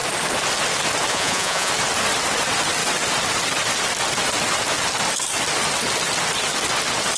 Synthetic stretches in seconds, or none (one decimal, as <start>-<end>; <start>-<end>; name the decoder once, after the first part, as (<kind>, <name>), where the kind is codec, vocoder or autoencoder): 1.1-1.7 (vocoder, Vocos)